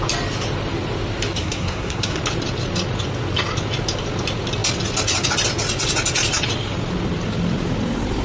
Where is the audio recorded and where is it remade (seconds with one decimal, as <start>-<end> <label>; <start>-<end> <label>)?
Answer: 0.0-1.4 recorded; 1.4-2.2 remade; 2.2-8.2 recorded